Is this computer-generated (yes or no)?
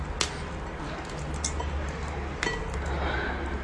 no